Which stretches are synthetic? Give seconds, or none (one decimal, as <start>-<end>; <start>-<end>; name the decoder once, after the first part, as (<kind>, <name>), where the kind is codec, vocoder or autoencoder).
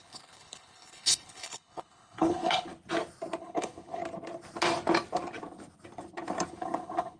0.0-2.7 (codec, HILCodec); 3.4-4.0; 6.5-7.2